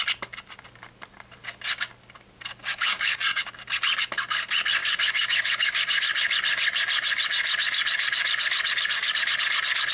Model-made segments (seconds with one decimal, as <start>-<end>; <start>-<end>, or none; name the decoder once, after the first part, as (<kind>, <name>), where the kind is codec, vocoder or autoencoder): 2.7-3.4 (codec, DAC); 4.8-6.0